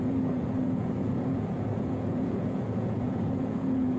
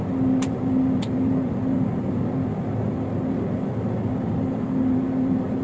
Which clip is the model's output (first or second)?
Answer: first